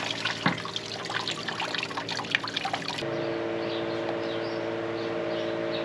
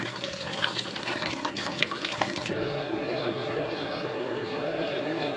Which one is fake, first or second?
second